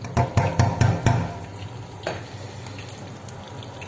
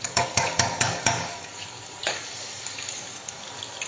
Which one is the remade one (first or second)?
second